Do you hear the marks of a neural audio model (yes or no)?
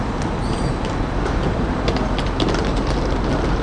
no